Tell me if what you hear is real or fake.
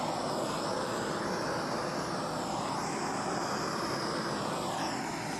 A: real